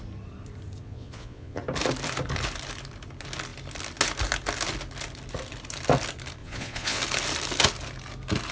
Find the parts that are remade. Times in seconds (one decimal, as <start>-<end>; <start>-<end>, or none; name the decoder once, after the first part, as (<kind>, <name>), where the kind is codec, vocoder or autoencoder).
0.8-1.6 (vocoder, Vocos); 6.4-7.0